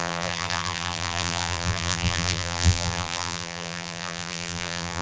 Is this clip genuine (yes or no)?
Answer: no